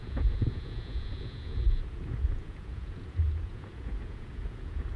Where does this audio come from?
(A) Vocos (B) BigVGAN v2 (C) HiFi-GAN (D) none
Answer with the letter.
A